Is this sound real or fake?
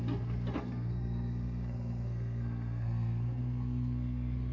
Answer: fake